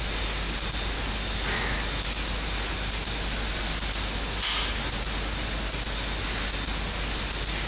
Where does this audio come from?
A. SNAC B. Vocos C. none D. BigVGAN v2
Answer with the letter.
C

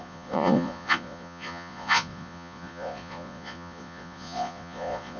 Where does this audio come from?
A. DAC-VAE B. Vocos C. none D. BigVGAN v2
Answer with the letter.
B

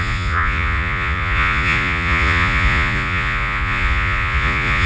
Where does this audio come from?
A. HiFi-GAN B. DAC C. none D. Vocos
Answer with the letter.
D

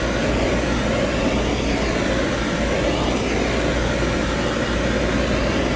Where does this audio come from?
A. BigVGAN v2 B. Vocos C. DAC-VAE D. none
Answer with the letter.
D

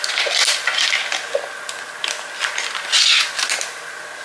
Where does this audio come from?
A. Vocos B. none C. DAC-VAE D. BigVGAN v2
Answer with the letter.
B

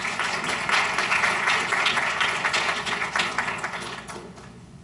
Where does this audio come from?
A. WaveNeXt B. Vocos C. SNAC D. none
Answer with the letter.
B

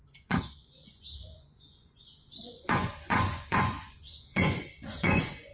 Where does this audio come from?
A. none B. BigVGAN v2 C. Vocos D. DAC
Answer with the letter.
C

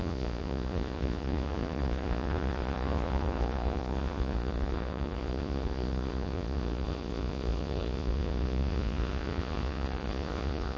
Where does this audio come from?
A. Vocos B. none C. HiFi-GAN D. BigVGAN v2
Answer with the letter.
A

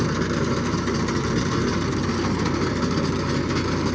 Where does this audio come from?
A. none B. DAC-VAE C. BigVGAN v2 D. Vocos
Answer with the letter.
A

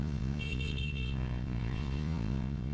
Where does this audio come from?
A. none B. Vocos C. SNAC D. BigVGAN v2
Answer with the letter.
B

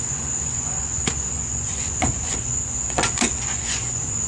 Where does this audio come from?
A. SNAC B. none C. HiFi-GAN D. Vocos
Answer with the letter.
D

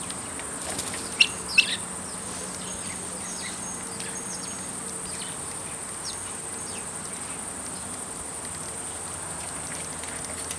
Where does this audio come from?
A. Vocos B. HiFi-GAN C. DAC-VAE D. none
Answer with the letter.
D